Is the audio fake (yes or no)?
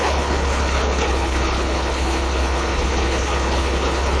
yes